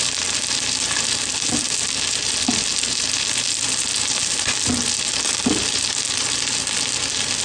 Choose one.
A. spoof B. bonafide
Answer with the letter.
B